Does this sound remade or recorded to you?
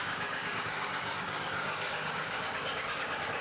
remade